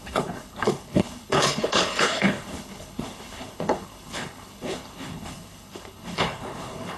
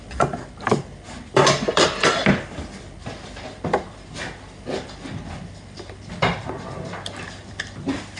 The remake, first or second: first